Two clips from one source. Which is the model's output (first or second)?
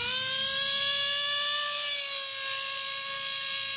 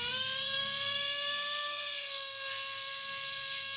second